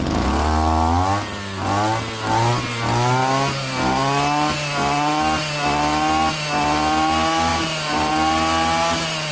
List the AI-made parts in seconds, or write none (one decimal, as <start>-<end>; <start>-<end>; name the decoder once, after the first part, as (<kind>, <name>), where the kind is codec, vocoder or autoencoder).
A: 7.5-8.1 (vocoder, BigVGAN v2)